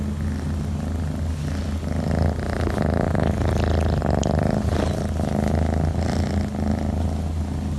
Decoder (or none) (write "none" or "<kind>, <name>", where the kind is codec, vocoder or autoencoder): none